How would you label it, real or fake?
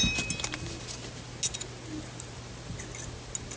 real